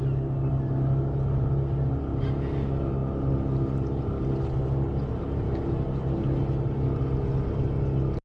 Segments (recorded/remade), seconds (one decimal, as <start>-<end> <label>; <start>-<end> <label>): 0.0-8.2 recorded